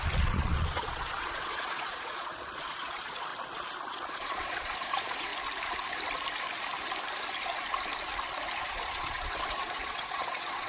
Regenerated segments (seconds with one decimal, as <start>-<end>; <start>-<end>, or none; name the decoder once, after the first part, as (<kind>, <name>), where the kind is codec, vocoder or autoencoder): 0.0-3.3 (vocoder, Vocos); 3.9-5.3; 8.6-10.7